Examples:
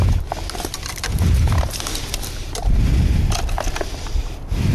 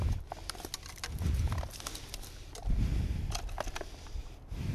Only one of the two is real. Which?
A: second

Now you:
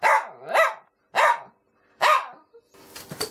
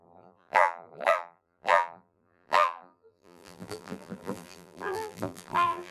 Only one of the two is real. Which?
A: first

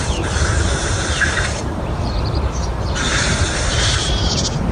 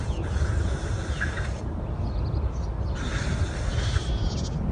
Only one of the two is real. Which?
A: second